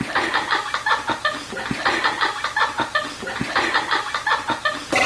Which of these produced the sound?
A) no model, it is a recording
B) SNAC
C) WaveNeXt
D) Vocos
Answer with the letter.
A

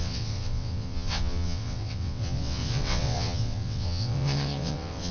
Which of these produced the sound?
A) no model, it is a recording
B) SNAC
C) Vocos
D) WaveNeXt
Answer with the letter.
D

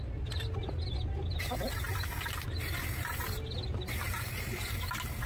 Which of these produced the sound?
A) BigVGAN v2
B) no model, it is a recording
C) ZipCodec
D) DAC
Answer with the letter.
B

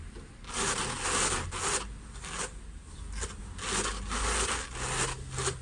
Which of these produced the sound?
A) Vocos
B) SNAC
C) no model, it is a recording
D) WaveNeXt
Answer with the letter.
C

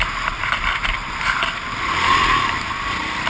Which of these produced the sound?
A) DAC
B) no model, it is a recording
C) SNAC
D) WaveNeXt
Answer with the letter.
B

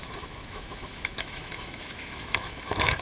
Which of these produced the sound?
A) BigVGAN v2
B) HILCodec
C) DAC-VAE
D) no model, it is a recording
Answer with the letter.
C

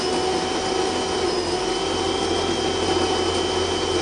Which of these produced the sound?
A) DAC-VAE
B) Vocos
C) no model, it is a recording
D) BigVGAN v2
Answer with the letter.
C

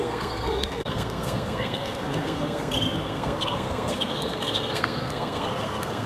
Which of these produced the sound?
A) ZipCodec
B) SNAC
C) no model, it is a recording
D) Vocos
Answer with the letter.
B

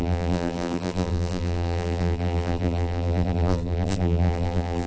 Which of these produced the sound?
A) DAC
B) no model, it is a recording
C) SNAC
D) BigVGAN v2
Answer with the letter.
D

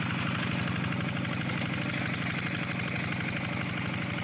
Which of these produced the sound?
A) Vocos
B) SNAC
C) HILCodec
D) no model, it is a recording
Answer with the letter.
D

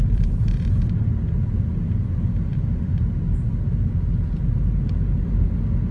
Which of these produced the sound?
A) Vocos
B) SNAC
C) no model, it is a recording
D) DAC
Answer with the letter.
C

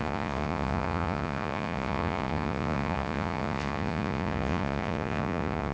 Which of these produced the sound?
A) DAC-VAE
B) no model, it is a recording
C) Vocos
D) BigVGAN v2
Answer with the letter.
C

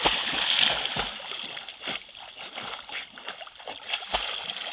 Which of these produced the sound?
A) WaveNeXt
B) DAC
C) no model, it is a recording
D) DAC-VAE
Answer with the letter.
C